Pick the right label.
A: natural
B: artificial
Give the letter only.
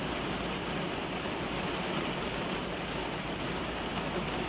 A